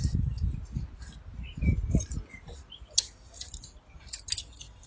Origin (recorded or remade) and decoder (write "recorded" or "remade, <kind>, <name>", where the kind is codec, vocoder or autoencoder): recorded